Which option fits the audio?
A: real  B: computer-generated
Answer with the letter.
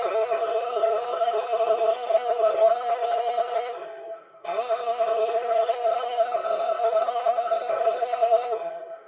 B